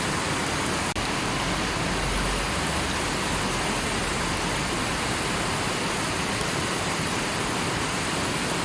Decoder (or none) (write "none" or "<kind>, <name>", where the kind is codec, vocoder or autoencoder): none